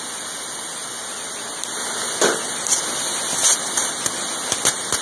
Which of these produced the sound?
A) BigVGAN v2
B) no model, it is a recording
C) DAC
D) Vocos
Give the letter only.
B